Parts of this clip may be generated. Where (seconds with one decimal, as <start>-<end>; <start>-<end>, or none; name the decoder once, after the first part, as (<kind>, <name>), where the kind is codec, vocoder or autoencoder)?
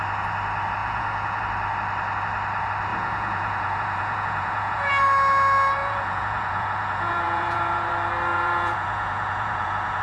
0.8-1.4 (vocoder, Vocos); 2.9-4.9; 5.8-7.9; 8.3-10.0